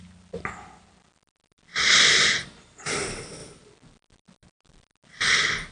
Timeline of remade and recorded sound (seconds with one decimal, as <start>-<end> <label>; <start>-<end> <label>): 0.0-5.7 recorded